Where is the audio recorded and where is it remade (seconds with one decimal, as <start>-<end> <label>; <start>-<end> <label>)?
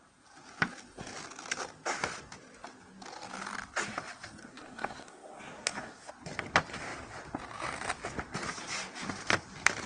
0.0-4.4 recorded; 4.4-6.1 remade; 6.1-9.9 recorded